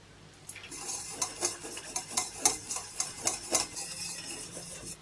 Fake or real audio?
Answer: real